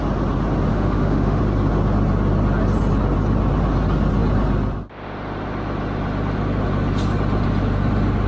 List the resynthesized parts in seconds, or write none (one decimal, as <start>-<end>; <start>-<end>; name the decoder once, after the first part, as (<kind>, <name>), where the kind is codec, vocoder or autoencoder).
0.7-1.4 (autoencoder, DAC-VAE)